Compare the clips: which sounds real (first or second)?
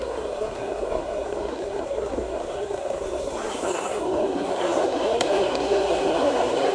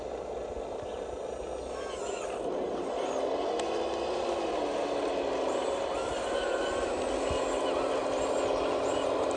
second